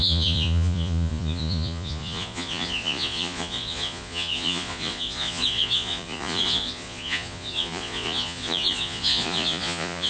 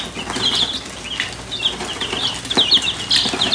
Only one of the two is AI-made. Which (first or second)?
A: first